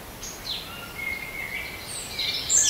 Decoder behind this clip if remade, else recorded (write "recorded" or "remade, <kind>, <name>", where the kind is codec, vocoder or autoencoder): recorded